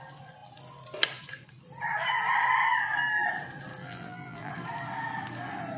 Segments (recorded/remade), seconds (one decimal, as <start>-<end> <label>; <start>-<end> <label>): 0.0-3.8 recorded; 3.8-4.5 remade; 4.5-5.8 recorded